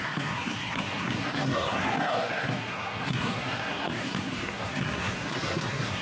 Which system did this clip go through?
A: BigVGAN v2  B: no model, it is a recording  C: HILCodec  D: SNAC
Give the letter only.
D